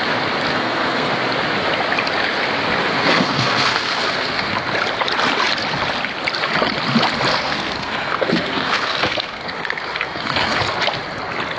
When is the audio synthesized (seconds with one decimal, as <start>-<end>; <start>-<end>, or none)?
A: 0.5-1.1; 2.8-4.5; 7.3-10.6